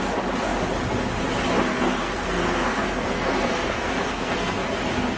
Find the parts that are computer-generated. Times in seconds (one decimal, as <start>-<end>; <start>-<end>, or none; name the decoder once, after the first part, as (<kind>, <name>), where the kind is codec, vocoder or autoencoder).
1.7-4.8 (codec, SNAC)